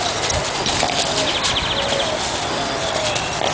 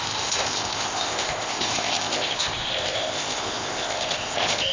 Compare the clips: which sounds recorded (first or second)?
first